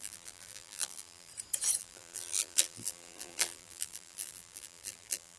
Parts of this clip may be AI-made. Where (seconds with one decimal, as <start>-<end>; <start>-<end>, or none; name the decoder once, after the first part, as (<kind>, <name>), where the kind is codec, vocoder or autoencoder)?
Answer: 0.0-1.3 (vocoder, BigVGAN v2); 1.8-5.4